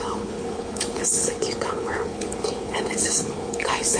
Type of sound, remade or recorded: remade